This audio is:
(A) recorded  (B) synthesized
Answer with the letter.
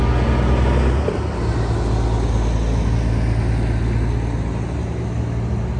A